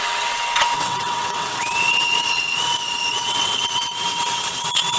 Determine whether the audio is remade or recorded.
remade